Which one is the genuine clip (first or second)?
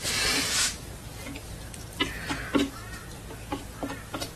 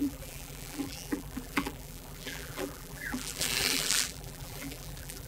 first